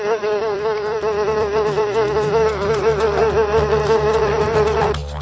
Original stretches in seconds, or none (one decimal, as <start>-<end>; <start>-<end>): 3.2-4.2